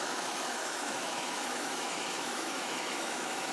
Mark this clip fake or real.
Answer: fake